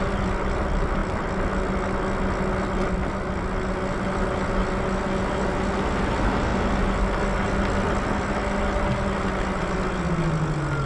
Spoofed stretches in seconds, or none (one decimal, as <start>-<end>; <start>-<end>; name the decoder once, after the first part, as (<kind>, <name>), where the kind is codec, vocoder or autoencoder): none